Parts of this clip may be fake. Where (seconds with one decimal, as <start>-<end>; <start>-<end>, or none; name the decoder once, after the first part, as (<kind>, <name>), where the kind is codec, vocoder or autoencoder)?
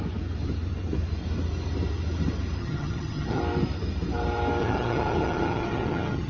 2.6-3.4 (vocoder, HiFi-GAN); 4.6-6.3